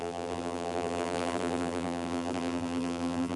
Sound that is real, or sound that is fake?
fake